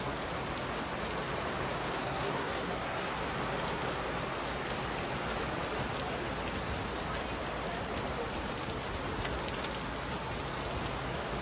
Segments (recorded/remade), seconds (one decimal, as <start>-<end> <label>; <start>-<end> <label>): 0.0-2.0 recorded; 2.0-3.2 remade; 3.2-11.4 recorded